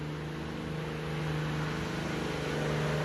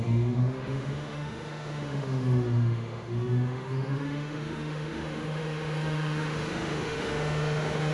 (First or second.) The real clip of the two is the first